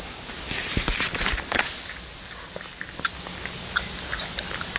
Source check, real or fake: real